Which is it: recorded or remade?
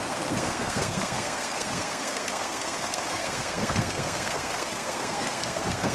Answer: remade